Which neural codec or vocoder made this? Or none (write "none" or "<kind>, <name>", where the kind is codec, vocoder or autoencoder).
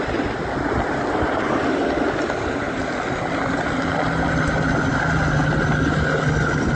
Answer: none